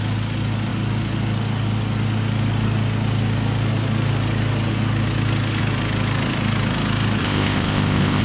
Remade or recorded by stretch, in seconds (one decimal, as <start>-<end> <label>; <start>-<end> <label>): 0.0-7.2 recorded; 7.2-8.2 remade